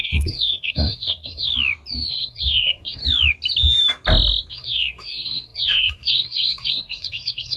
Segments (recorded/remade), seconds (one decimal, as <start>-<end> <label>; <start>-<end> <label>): 0.0-1.5 remade; 1.5-2.1 recorded; 2.1-3.0 remade; 3.0-4.5 recorded; 4.5-7.6 remade